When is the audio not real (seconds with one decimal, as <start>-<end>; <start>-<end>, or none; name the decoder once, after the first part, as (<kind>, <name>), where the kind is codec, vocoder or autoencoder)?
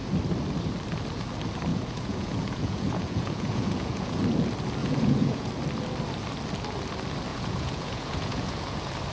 1.7-4.2 (vocoder, Vocos); 4.8-5.5; 7.3-8.6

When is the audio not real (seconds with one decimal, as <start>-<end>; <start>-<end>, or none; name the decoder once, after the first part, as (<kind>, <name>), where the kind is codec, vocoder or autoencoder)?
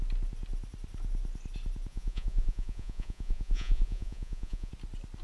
1.9-4.7 (vocoder, Vocos)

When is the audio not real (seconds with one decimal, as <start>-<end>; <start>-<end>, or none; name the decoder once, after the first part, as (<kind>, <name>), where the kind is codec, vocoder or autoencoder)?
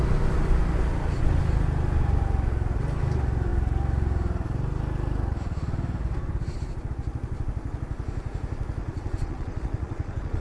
8.8-10.4 (vocoder, Vocos)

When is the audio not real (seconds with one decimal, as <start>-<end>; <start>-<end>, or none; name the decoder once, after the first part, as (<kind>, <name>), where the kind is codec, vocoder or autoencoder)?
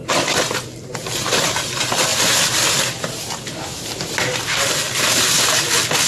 none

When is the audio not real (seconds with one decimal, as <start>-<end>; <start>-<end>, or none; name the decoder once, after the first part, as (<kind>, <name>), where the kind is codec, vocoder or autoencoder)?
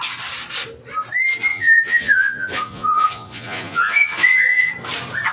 1.5-4.7 (vocoder, Vocos)